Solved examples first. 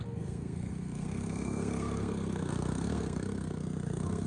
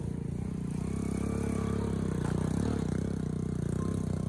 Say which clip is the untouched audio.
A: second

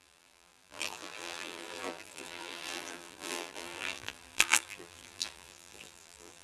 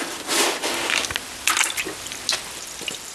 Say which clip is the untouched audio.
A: second